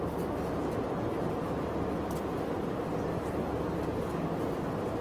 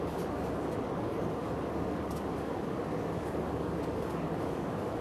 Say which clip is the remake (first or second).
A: second